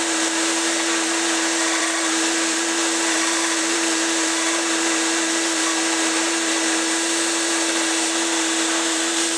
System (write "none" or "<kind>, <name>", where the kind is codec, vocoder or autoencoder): vocoder, BigVGAN v2